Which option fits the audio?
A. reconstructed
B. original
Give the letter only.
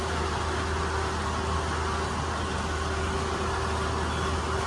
B